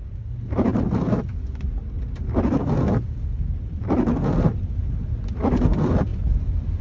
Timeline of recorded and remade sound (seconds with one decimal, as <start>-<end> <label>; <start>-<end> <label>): 0.0-6.8 recorded